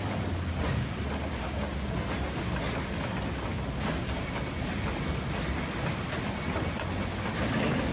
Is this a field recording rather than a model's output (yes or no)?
yes